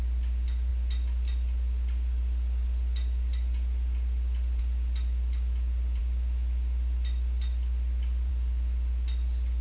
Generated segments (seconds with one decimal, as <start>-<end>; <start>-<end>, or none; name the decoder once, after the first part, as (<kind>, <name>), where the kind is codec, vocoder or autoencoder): none